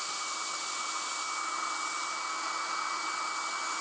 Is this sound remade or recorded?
recorded